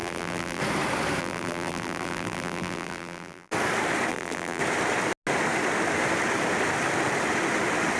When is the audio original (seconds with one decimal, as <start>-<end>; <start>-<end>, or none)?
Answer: 0.6-1.2; 3.5-4.1; 4.6-8.0